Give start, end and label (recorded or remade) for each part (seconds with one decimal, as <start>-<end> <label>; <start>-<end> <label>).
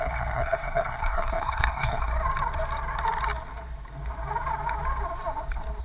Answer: 0.0-2.1 remade; 2.1-5.8 recorded